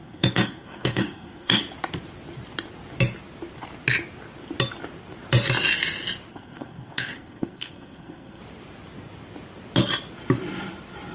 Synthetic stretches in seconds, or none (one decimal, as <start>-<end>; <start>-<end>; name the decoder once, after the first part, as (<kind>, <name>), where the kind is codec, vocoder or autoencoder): 0.0-1.6 (codec, SNAC); 6.3-8.4